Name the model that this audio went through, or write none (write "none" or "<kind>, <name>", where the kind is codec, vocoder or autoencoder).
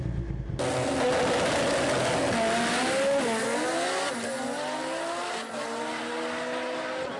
none